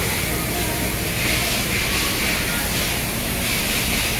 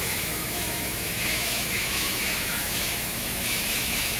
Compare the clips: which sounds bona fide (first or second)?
first